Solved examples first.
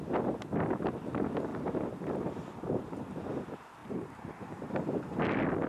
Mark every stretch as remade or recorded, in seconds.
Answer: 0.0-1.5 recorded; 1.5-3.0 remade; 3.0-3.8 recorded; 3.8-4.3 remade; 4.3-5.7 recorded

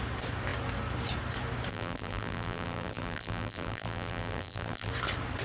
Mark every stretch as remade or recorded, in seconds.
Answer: 0.0-1.7 recorded; 1.7-4.9 remade; 4.9-5.4 recorded

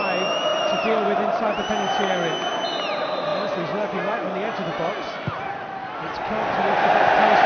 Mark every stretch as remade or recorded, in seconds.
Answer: 0.0-0.5 recorded; 0.5-1.7 remade; 1.7-7.5 recorded

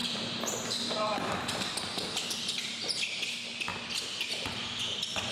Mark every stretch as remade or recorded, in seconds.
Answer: 0.0-3.2 remade; 3.2-3.7 recorded; 3.7-4.3 remade; 4.3-5.3 recorded

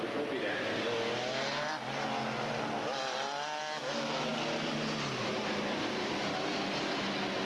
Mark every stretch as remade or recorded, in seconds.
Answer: 0.0-7.4 recorded